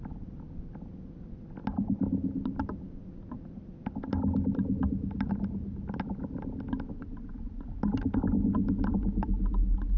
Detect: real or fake real